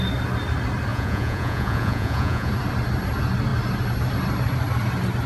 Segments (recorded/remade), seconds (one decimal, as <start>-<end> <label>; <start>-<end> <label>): 0.0-0.9 recorded; 0.9-2.5 remade; 2.5-5.3 recorded